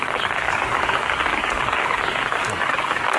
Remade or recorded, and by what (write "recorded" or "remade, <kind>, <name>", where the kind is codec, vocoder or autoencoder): remade, codec, DAC